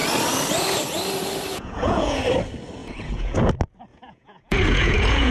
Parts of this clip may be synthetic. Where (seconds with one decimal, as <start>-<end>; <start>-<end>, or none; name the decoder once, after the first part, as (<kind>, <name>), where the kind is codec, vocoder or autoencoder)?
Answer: 1.5-2.2 (vocoder, Vocos); 2.8-3.5; 3.9-5.3